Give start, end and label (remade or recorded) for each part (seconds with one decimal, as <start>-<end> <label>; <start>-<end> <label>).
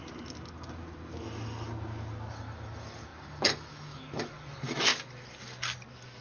0.0-2.3 recorded; 2.3-4.9 remade; 4.9-6.2 recorded